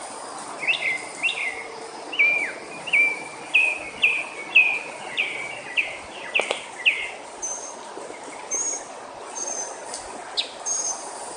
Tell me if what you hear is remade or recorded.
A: recorded